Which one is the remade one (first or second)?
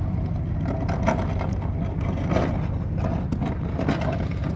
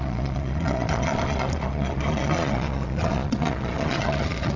second